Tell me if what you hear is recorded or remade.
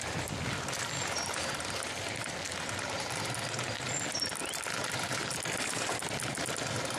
recorded